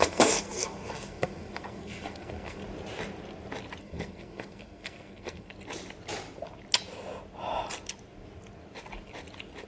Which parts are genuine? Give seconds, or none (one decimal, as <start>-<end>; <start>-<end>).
2.6-3.8; 5.5-9.7